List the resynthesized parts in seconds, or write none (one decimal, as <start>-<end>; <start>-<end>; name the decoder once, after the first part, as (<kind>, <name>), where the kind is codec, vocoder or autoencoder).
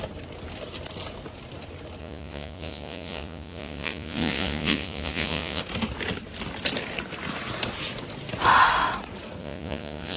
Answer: 2.0-5.6 (vocoder, Vocos); 9.4-10.2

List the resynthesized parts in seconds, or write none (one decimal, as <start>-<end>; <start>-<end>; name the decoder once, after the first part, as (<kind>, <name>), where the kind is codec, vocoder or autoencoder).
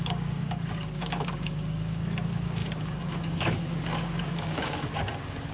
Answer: 0.0-5.5 (codec, DAC)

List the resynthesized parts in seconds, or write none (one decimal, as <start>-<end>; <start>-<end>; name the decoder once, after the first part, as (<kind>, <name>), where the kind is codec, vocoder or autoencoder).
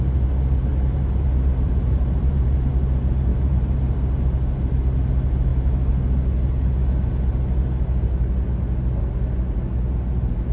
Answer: 0.7-2.7 (vocoder, BigVGAN v2); 3.3-4.0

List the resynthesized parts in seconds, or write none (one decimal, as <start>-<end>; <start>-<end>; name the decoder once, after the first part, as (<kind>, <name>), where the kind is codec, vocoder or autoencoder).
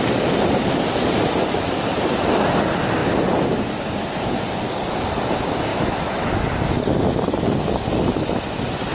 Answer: 5.7-6.3 (autoencoder, DAC-VAE)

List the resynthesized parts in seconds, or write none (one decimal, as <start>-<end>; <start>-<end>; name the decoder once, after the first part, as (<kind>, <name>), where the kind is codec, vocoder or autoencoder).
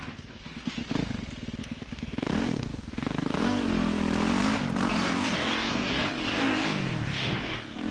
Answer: 0.0-0.8 (codec, DAC); 1.6-4.0; 4.9-7.9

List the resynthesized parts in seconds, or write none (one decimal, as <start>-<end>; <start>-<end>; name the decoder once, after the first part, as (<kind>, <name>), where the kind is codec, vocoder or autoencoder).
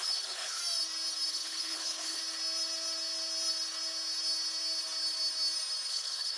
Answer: 0.0-0.6 (codec, HILCodec); 1.3-2.2; 5.9-6.4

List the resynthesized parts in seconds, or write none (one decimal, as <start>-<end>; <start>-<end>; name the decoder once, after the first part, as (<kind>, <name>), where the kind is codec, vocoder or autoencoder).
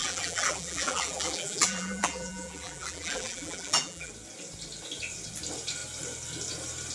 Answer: 0.0-4.1 (vocoder, BigVGAN v2)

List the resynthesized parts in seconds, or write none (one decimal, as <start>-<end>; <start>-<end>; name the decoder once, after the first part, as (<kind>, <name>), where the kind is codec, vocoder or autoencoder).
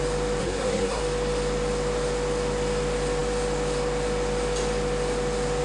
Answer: 0.4-1.0 (codec, SNAC)